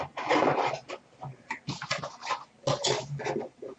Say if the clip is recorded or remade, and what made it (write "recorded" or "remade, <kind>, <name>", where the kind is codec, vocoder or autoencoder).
recorded